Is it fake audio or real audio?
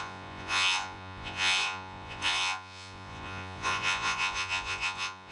fake